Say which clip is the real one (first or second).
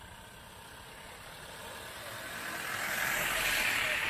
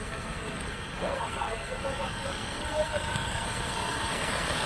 first